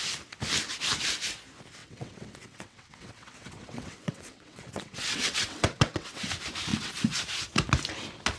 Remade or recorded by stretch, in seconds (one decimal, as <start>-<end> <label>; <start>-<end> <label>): 0.0-1.8 recorded; 1.8-6.3 remade; 6.3-6.7 recorded; 6.7-7.2 remade; 7.2-8.4 recorded